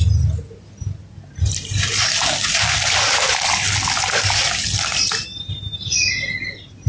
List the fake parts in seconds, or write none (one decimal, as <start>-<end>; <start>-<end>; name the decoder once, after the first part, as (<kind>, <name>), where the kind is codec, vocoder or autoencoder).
none